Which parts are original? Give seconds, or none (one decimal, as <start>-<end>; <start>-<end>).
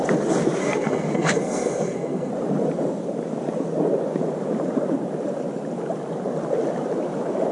0.0-0.6; 2.3-7.5